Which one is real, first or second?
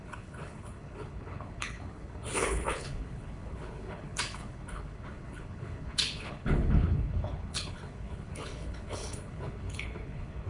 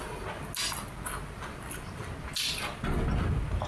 second